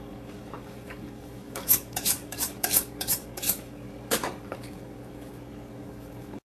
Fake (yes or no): yes